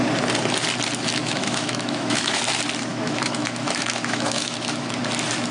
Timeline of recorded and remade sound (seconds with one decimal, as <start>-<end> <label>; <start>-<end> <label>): 0.0-1.2 recorded; 1.2-2.4 remade; 2.4-2.9 recorded; 2.9-5.0 remade; 5.0-5.5 recorded